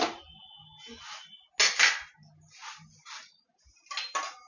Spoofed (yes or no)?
no